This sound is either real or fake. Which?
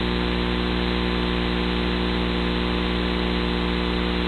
real